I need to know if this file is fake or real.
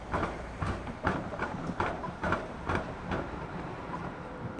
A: fake